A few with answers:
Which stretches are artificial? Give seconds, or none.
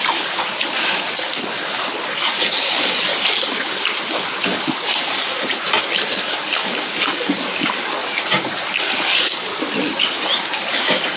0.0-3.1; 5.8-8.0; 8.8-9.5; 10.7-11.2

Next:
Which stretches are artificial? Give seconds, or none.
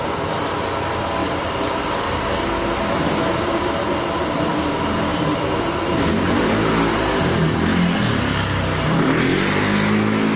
1.2-3.1; 5.1-6.7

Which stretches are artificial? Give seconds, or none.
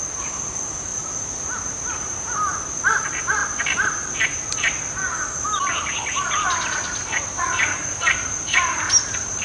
0.0-0.9; 1.7-3.4; 7.4-9.4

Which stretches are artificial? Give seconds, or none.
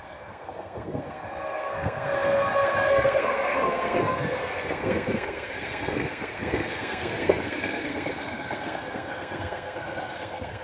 0.0-10.6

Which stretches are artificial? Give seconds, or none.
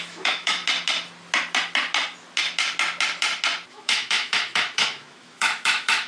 0.0-0.6; 3.7-6.1